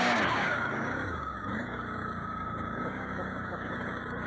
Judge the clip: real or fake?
fake